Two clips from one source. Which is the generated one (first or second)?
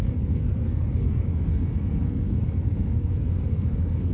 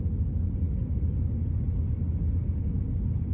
first